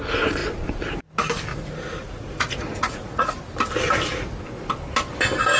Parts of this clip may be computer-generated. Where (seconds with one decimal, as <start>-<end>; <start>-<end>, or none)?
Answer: 1.5-3.4